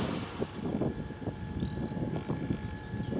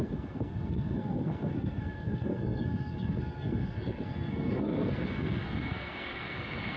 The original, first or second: first